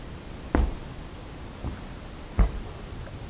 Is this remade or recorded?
recorded